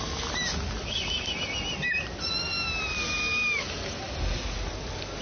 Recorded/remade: recorded